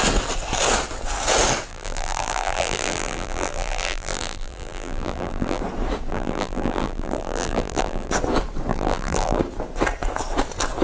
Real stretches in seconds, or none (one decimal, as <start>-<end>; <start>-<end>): 0.0-1.7; 5.6-6.1; 8.1-8.7; 9.4-10.8